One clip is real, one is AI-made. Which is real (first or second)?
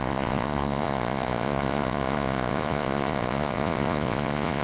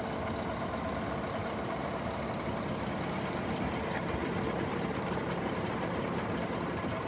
second